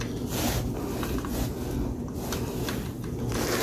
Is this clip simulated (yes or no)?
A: no